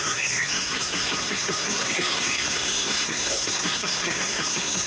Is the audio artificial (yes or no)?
yes